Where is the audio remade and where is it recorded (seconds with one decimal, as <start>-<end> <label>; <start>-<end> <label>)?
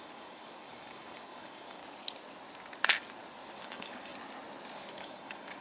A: 0.0-1.8 remade; 1.8-3.5 recorded; 3.5-4.1 remade; 4.1-4.9 recorded; 4.9-5.6 remade